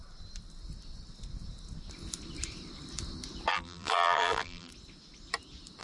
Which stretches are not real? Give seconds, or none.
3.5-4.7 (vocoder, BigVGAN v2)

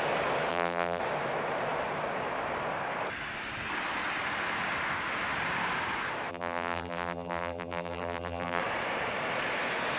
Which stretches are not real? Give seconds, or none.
0.5-1.0 (vocoder, BigVGAN v2); 6.3-8.6

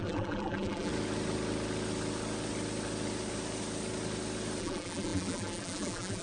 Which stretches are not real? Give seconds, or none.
0.0-0.9 (vocoder, BigVGAN v2); 4.6-6.2

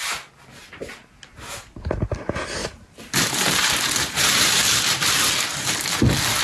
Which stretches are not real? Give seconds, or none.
2.6-5.1 (vocoder, BigVGAN v2)

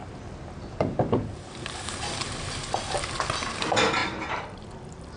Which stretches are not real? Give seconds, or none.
0.0-3.1 (vocoder, BigVGAN v2); 4.0-5.2

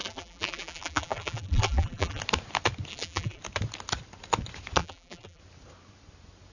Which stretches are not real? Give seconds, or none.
0.0-2.2 (vocoder, BigVGAN v2); 2.9-3.4; 4.8-5.4